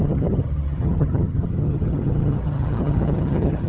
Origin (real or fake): fake